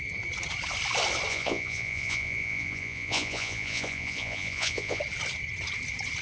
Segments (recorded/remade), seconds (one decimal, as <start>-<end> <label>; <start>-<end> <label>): 0.0-1.3 recorded; 1.3-5.0 remade; 5.0-6.2 recorded

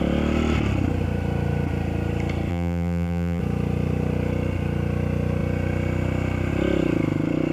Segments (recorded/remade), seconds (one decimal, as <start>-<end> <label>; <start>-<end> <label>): 0.0-2.5 recorded; 2.5-3.4 remade; 3.4-7.5 recorded

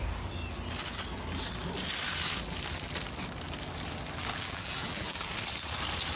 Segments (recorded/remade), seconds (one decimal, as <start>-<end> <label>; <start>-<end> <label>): 0.0-4.3 recorded; 4.3-5.3 remade; 5.3-6.2 recorded

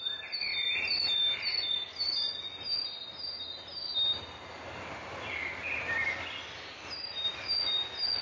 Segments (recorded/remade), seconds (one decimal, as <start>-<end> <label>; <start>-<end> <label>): 0.0-8.2 recorded

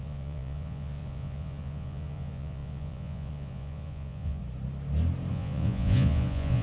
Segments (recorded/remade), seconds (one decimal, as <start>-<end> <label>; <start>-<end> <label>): 0.0-4.4 remade; 4.4-5.3 recorded; 5.3-6.6 remade

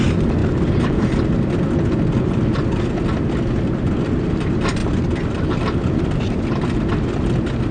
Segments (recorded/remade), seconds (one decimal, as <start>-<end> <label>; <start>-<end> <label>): 0.0-7.7 recorded

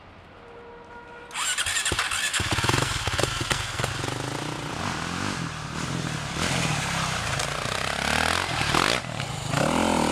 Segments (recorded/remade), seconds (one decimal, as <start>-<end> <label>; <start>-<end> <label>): 0.0-2.3 recorded; 2.3-3.9 remade; 3.9-10.1 recorded

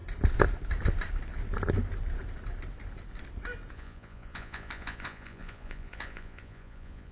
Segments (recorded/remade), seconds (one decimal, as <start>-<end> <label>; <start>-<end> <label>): 0.0-3.7 recorded; 3.7-7.1 remade